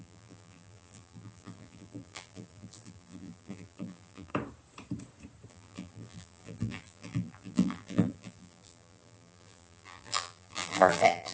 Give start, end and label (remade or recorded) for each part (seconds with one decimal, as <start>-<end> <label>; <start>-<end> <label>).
0.0-4.3 remade; 4.3-5.5 recorded; 5.5-11.3 remade